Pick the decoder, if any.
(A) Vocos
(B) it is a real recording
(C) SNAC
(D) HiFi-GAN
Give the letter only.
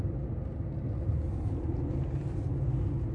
B